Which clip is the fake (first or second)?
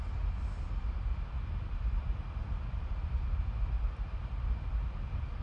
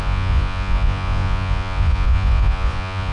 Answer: second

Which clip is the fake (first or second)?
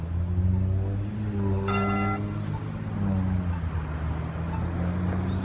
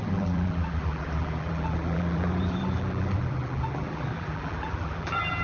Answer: second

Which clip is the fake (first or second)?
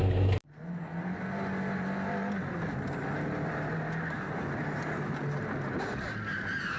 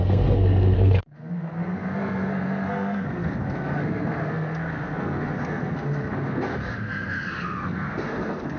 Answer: second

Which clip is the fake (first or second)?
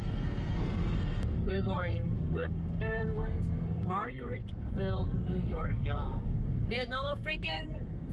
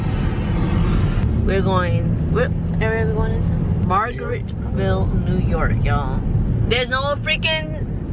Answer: first